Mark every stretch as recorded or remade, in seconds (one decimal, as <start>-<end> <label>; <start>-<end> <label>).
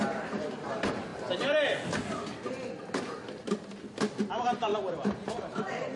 0.0-1.1 remade; 1.1-4.3 recorded; 4.3-6.0 remade